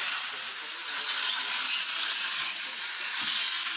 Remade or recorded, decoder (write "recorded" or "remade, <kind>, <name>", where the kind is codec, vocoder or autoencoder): recorded